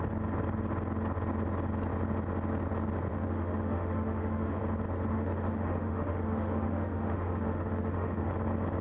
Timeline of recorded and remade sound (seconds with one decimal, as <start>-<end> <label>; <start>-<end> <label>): 0.0-3.1 recorded; 3.1-4.6 remade; 4.6-5.1 recorded; 5.1-8.3 remade; 8.3-8.8 recorded